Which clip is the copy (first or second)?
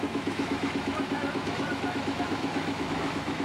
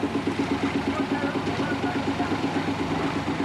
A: first